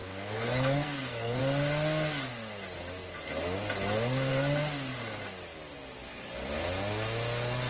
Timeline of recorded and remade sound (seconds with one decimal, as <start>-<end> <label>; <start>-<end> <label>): 0.0-1.4 remade; 1.4-7.7 recorded